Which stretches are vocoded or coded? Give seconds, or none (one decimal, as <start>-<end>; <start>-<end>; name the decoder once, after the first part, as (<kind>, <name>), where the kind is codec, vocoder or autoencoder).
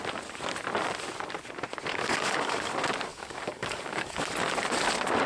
1.9-2.7 (codec, DAC); 3.1-4.2